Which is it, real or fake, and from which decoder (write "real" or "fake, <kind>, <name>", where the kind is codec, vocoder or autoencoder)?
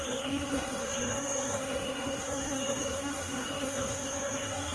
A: fake, codec, SNAC